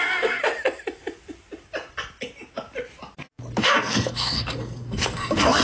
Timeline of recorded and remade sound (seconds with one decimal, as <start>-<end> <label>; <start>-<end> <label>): 0.0-0.4 remade; 0.4-3.6 recorded; 3.6-5.6 remade